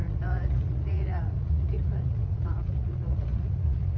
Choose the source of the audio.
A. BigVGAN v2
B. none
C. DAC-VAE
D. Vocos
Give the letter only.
D